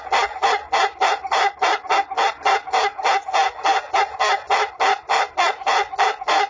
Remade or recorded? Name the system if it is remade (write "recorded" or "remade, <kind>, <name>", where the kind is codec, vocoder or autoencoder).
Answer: recorded